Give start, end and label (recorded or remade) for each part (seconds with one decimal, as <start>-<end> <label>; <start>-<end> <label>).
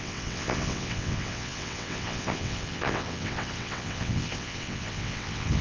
0.0-5.6 remade